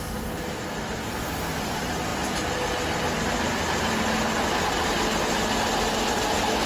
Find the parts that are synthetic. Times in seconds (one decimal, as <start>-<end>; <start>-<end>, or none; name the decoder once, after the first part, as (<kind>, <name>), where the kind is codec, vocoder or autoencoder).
none